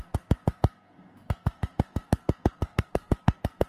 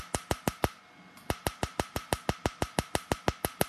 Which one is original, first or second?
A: second